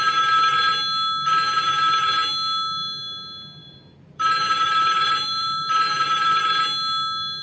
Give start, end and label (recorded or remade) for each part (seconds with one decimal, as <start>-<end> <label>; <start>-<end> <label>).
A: 0.0-3.6 recorded; 3.6-6.4 remade; 6.4-7.4 recorded

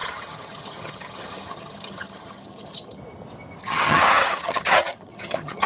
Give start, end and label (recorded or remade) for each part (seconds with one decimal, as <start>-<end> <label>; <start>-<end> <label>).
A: 0.0-3.0 remade; 3.0-3.6 recorded; 3.6-5.7 remade

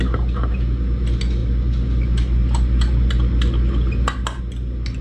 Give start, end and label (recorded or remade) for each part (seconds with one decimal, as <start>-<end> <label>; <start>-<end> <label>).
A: 0.0-5.0 recorded